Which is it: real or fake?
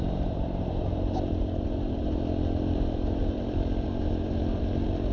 fake